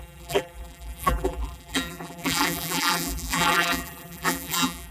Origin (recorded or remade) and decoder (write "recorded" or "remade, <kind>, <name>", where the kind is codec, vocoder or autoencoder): remade, vocoder, BigVGAN v2